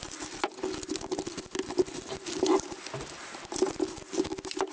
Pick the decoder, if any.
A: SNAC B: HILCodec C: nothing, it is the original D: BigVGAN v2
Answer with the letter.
C